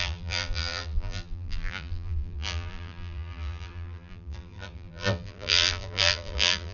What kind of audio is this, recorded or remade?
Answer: remade